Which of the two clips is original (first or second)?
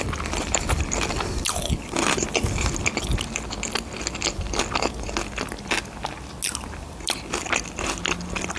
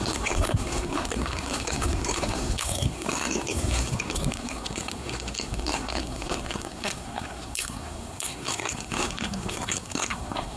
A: first